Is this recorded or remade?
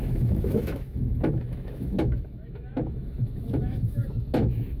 remade